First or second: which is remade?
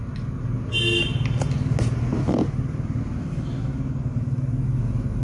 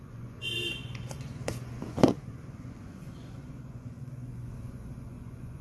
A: second